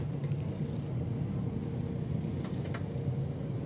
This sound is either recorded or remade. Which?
recorded